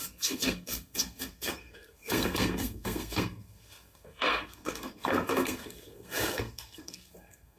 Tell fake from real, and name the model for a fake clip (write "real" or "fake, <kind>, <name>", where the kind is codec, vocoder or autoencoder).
fake, codec, SNAC